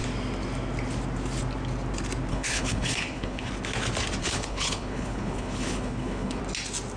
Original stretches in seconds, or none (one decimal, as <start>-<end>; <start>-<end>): 0.0-2.3; 3.5-4.2; 6.4-7.0